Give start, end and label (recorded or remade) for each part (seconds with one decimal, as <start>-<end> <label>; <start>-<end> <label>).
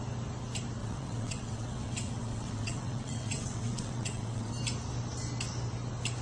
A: 0.0-0.8 recorded; 0.8-4.5 remade; 4.5-6.2 recorded